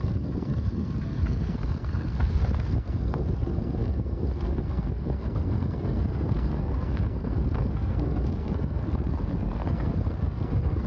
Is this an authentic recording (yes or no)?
no